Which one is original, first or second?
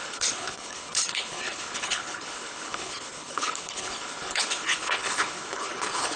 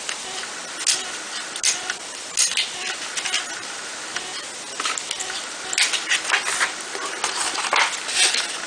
second